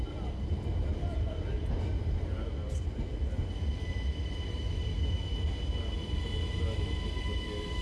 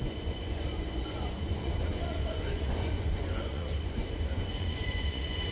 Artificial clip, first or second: second